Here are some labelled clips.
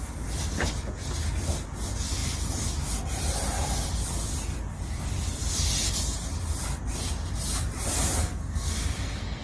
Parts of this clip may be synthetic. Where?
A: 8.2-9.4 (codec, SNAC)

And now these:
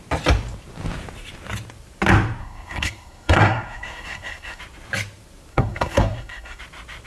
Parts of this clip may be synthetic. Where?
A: 2.4-4.6 (codec, SNAC); 5.5-6.6

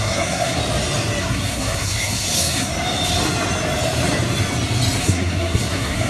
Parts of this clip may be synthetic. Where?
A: 0.0-0.6 (codec, SNAC); 1.2-2.7; 5.0-6.1

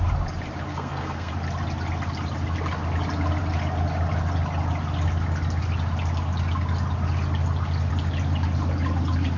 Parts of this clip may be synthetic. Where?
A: 0.7-1.3 (codec, SNAC)

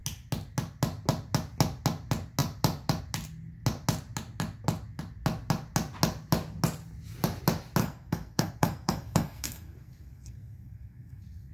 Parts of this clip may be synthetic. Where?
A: 7.8-11.5 (codec, SNAC)

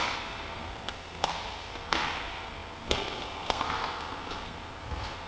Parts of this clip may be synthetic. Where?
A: 0.0-5.3 (codec, SNAC)